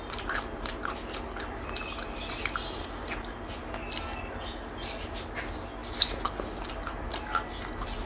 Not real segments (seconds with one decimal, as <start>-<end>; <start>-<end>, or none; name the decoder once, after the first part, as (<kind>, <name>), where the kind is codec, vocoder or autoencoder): none